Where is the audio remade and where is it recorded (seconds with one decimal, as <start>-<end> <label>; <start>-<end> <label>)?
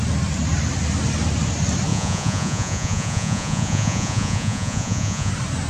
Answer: 0.0-1.9 recorded; 1.9-5.3 remade; 5.3-5.7 recorded